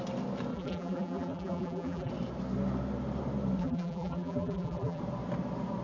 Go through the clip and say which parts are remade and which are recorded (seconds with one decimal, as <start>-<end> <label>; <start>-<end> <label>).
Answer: 0.0-0.5 recorded; 0.5-2.1 remade; 2.1-3.6 recorded; 3.6-5.0 remade; 5.0-5.8 recorded

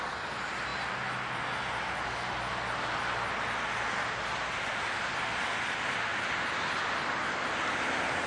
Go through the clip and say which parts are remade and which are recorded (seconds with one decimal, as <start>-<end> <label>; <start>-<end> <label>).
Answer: 0.0-0.7 remade; 0.7-5.1 recorded; 5.1-8.3 remade